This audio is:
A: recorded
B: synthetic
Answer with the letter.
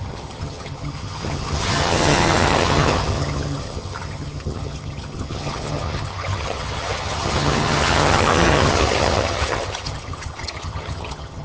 B